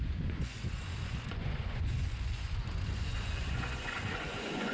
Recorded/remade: remade